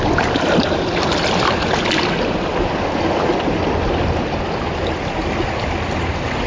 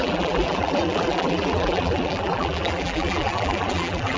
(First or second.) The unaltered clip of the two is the first